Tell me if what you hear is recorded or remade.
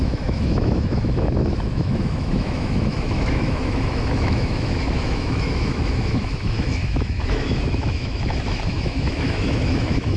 remade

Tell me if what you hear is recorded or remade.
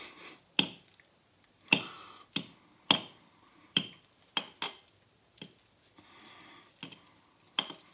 recorded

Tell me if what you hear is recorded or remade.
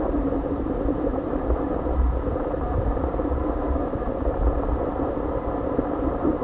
remade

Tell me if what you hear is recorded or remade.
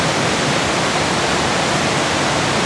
recorded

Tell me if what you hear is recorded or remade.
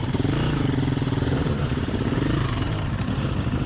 remade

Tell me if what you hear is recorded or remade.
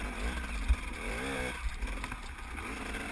recorded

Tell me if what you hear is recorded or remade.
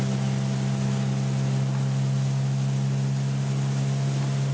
recorded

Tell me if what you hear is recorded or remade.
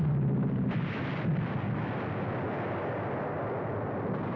recorded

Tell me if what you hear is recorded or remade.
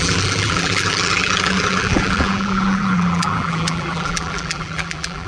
remade